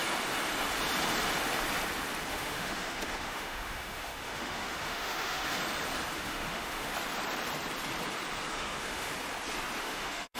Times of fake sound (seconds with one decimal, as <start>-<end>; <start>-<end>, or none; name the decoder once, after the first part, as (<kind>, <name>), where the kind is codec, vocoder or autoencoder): 2.3-5.6 (autoencoder, DAC-VAE); 6.1-6.9; 8.5-9.1; 9.8-10.4